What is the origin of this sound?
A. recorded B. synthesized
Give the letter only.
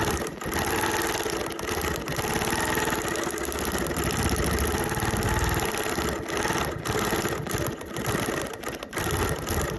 A